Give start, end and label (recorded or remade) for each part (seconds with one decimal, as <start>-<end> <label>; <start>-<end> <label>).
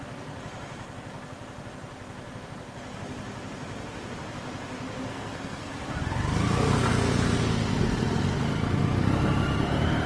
0.0-5.1 recorded; 5.1-5.7 remade; 5.7-10.1 recorded